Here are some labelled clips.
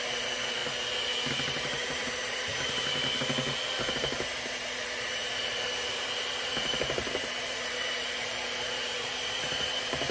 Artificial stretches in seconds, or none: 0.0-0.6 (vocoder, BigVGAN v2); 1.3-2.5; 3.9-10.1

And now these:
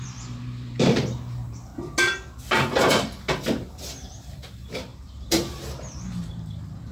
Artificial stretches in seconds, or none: 0.0-1.7 (vocoder, BigVGAN v2); 3.8-6.9

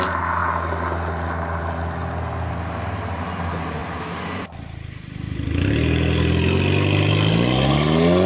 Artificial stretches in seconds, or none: 3.8-7.1 (vocoder, BigVGAN v2)

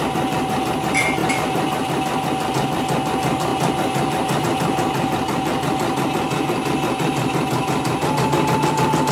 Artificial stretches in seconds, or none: none